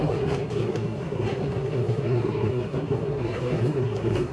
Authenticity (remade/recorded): remade